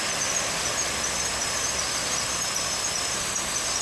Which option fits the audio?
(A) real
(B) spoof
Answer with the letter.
A